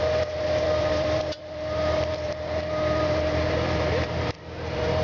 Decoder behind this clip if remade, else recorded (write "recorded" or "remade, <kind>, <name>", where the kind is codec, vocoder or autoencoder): remade, vocoder, BigVGAN v2